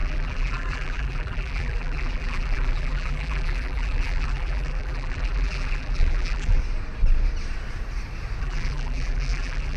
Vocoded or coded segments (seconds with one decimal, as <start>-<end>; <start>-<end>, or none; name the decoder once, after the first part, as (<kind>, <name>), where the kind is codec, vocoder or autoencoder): 0.0-6.6 (vocoder, BigVGAN v2); 8.4-9.8